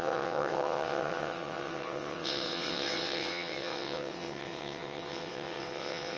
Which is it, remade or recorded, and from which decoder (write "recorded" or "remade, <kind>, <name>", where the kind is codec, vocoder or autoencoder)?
remade, vocoder, WaveNeXt